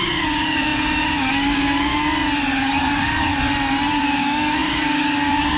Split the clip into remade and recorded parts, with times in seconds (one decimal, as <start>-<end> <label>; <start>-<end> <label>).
0.0-1.9 remade; 1.9-2.6 recorded; 2.6-3.3 remade; 3.3-3.9 recorded; 3.9-5.6 remade